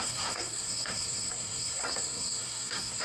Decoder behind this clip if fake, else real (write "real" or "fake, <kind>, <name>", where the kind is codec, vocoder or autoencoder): fake, codec, SNAC